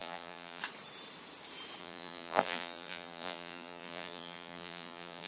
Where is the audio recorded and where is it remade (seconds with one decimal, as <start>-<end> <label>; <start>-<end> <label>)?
0.0-0.6 remade; 0.6-1.8 recorded; 1.8-5.3 remade